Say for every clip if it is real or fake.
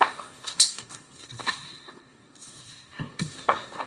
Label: fake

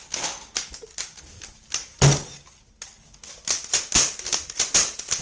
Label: real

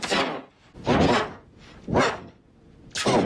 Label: real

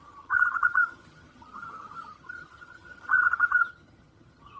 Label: fake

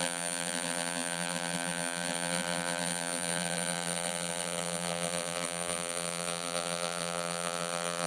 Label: fake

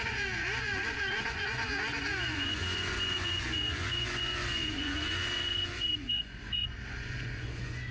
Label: fake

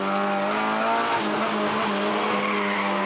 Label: real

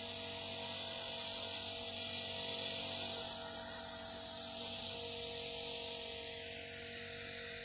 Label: real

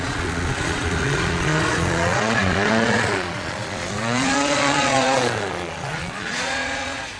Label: fake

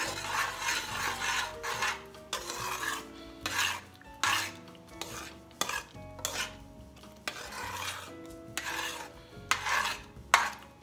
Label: real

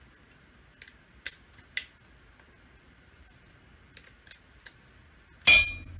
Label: real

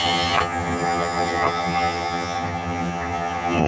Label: fake